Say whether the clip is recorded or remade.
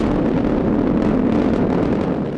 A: recorded